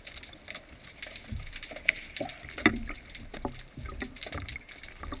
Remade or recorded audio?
remade